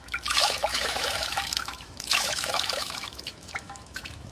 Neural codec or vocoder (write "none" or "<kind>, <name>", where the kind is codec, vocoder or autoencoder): autoencoder, DAC-VAE